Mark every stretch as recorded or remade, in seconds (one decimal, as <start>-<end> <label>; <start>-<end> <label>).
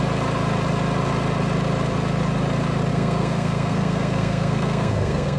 0.0-2.9 recorded; 2.9-5.4 remade